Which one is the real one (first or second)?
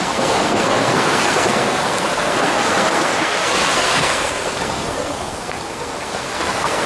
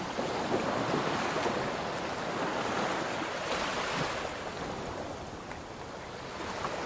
second